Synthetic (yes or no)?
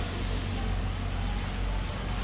no